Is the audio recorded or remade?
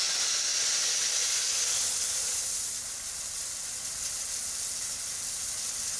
recorded